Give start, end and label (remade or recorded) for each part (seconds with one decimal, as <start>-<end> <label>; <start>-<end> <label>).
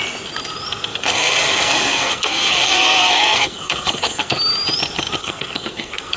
0.0-0.9 recorded; 0.9-4.4 remade; 4.4-5.2 recorded; 5.2-6.2 remade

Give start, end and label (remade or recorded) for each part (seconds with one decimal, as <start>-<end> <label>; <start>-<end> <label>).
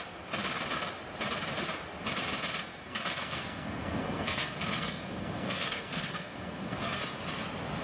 0.0-2.7 recorded; 2.7-7.0 remade; 7.0-7.8 recorded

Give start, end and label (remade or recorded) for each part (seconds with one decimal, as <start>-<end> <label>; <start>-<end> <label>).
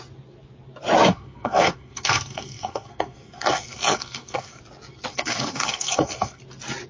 0.0-1.1 recorded; 1.1-4.6 remade; 4.6-5.1 recorded; 5.1-6.4 remade; 6.4-6.9 recorded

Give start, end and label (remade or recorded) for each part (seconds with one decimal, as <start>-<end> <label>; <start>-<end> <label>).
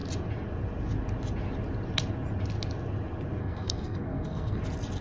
0.0-3.4 recorded; 3.4-4.6 remade; 4.6-5.0 recorded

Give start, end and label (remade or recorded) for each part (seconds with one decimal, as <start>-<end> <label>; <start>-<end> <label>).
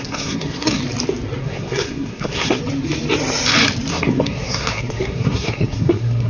0.0-0.8 remade; 0.8-1.4 recorded; 1.4-2.6 remade; 2.6-3.9 recorded; 3.9-6.3 remade